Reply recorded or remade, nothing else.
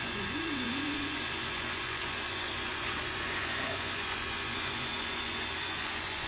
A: remade